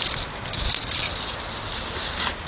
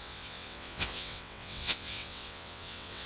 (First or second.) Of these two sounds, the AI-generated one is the second